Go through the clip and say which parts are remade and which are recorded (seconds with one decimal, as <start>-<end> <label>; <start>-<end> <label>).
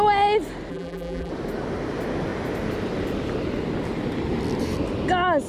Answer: 0.0-0.7 recorded; 0.7-1.3 remade; 1.3-5.5 recorded